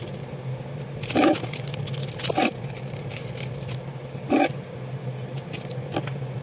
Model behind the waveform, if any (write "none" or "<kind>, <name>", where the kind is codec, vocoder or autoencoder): none